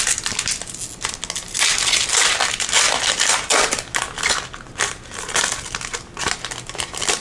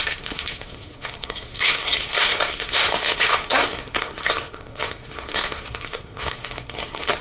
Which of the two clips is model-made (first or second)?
second